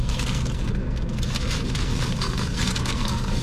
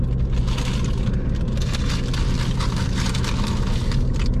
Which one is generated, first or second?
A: first